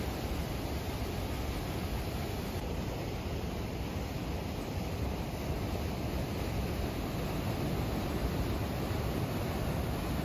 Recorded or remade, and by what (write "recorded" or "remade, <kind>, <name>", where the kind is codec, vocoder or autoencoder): recorded